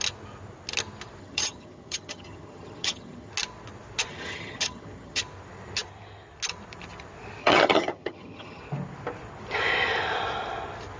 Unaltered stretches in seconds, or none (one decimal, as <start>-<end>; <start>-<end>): 0.0-1.2; 3.3-4.1; 5.2-7.4; 8.6-11.0